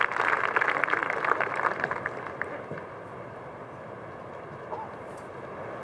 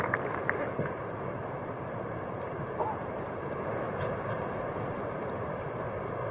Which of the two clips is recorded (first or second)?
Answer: first